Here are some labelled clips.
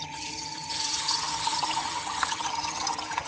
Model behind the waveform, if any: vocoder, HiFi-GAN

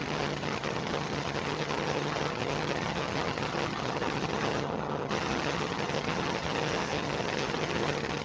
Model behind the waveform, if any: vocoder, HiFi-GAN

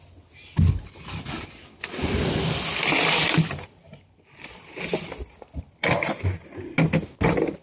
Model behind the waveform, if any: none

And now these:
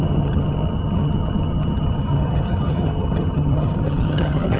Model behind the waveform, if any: vocoder, HiFi-GAN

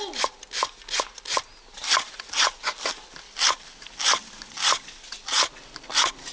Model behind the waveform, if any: none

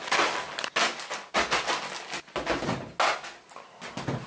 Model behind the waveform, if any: none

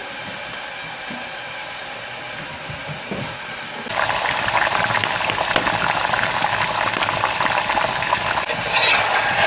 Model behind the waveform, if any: none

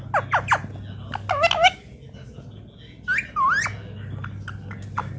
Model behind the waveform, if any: none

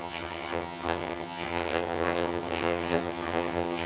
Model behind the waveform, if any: vocoder, HiFi-GAN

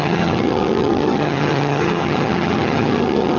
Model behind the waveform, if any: vocoder, HiFi-GAN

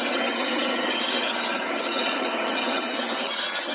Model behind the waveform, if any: vocoder, HiFi-GAN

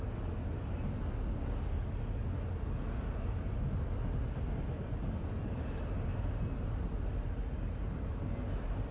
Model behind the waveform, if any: none